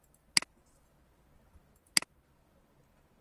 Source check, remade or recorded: recorded